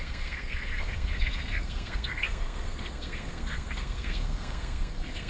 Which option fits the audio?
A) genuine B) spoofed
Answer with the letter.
B